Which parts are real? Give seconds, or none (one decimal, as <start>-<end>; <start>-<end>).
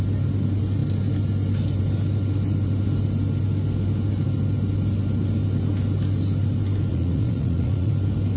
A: 0.0-6.9; 7.9-8.4